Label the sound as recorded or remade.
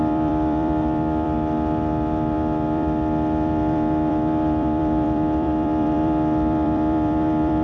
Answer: remade